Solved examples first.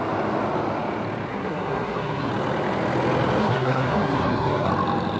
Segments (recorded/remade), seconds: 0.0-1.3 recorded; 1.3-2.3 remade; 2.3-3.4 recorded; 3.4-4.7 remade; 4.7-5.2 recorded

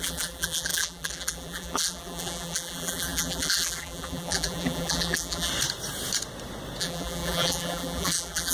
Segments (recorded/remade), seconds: 0.0-5.5 remade; 5.5-6.8 recorded; 6.8-8.5 remade

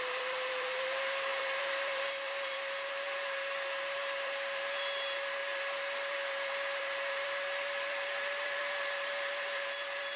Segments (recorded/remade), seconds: 0.0-10.2 remade

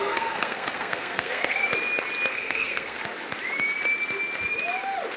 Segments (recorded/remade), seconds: 0.0-1.6 remade; 1.6-2.3 recorded; 2.3-3.0 remade; 3.0-5.2 recorded

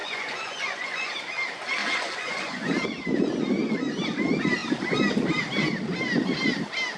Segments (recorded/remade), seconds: 0.0-1.1 remade; 1.1-1.8 recorded; 1.8-2.7 remade; 2.7-7.0 recorded